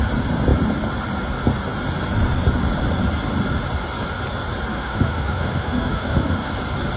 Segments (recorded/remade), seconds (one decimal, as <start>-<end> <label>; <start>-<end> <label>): 0.0-4.7 recorded; 4.7-6.5 remade; 6.5-7.0 recorded